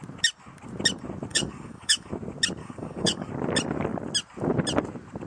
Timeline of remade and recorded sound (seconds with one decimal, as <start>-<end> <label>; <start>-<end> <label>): 0.0-1.3 recorded; 1.3-2.1 remade; 2.1-2.6 recorded; 2.6-3.3 remade; 3.3-5.3 recorded